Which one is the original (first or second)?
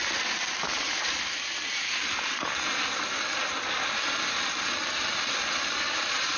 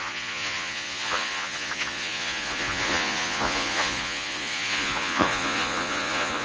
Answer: first